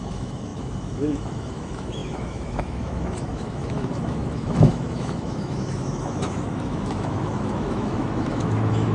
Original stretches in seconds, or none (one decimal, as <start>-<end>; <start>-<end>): none